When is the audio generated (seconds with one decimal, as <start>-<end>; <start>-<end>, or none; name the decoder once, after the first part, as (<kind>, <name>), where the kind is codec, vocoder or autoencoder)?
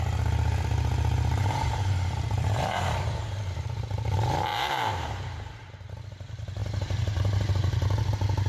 1.4-3.8 (vocoder, BigVGAN v2); 4.5-5.8; 6.6-7.5